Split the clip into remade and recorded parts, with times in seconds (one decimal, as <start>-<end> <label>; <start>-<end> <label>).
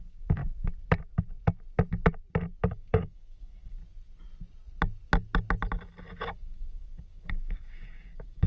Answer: 0.0-0.4 remade; 0.4-2.7 recorded; 2.7-3.8 remade; 3.8-6.2 recorded; 6.2-8.5 remade